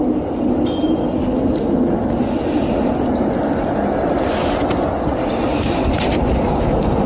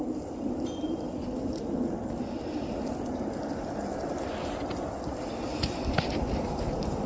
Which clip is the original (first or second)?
first